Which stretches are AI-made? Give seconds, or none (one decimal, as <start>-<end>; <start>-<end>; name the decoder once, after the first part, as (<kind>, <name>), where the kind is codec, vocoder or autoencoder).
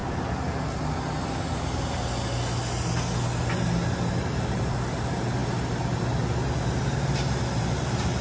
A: 4.1-5.4 (vocoder, BigVGAN v2); 7.7-8.2